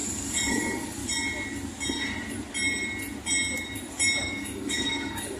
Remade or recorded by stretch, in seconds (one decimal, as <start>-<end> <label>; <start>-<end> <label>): 0.0-1.0 remade; 1.0-4.2 recorded; 4.2-5.4 remade